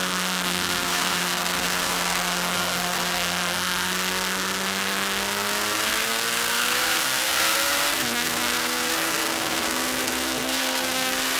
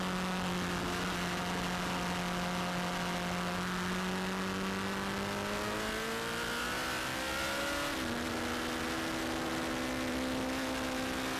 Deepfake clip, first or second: first